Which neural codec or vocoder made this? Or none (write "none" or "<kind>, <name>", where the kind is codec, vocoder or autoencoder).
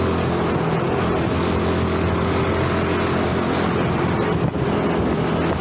none